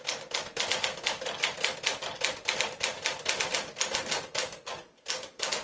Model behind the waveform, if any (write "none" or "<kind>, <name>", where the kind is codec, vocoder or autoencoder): none